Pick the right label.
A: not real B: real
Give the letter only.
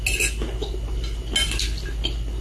B